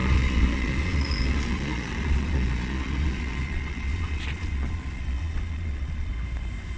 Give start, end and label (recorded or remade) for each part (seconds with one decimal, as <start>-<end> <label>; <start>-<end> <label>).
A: 0.0-6.1 remade; 6.1-6.8 recorded